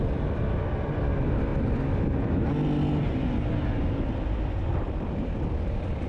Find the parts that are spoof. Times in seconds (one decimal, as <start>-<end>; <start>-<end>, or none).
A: 0.0-1.5; 4.4-6.1